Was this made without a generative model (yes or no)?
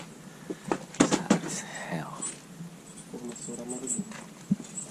yes